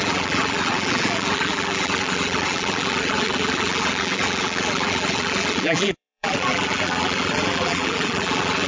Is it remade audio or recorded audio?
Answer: remade